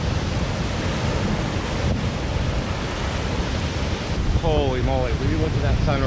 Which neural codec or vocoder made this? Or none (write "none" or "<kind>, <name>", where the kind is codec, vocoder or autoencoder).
none